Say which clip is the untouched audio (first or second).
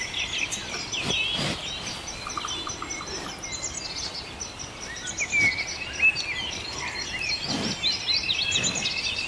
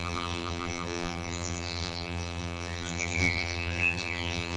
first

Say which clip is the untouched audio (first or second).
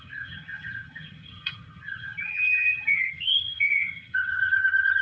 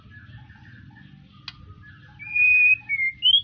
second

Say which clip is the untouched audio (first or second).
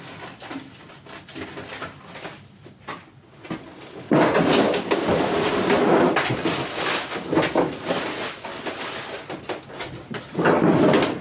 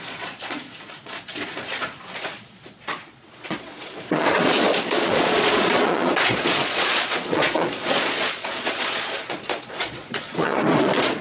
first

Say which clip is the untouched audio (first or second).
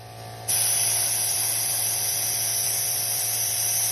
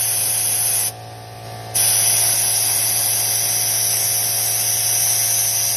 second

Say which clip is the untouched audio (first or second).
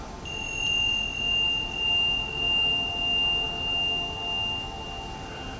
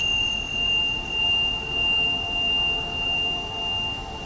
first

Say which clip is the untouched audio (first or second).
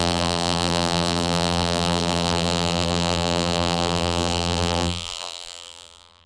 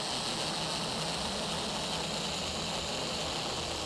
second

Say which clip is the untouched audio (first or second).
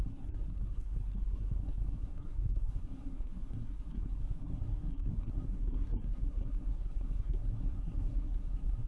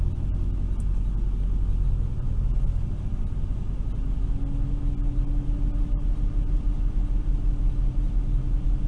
second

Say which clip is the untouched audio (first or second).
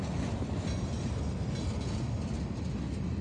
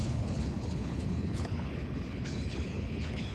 first